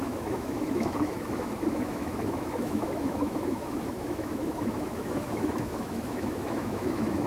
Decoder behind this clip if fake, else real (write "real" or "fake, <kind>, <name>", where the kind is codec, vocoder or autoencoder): fake, autoencoder, DAC-VAE